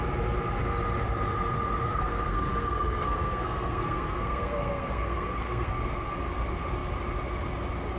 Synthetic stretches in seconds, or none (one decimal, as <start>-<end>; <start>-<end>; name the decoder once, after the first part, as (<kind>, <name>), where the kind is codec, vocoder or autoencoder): 1.9-6.1 (codec, SNAC)